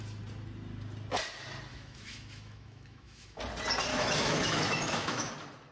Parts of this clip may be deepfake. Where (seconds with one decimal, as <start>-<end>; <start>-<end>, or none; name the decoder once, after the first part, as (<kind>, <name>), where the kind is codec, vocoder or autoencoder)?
1.7-3.4 (autoencoder, DAC-VAE); 3.9-5.3